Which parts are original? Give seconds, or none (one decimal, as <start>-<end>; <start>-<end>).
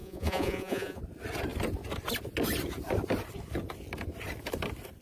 1.0-5.0